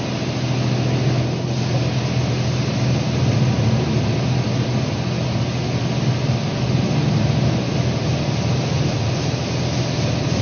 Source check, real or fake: real